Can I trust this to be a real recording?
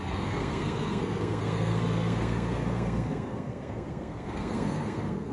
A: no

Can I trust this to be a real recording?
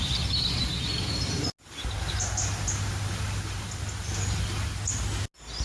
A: yes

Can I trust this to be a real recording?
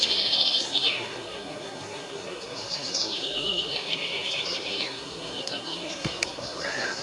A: no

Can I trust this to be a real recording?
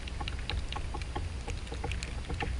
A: yes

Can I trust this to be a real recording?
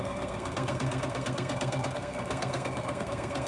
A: no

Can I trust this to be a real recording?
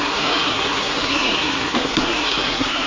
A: no